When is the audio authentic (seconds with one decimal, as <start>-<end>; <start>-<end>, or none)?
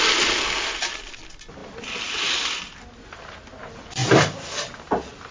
0.0-1.6; 2.6-4.0